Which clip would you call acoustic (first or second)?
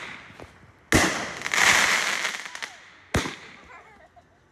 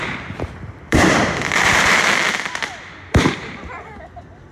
first